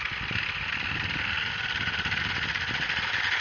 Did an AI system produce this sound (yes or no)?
no